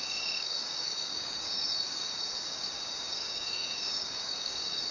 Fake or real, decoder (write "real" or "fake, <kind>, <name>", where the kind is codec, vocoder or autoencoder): fake, codec, DAC